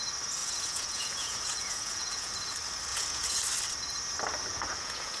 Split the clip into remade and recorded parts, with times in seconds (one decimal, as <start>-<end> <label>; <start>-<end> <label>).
0.0-0.4 recorded; 0.4-2.3 remade; 2.3-2.9 recorded; 2.9-3.4 remade; 3.4-4.5 recorded; 4.5-5.2 remade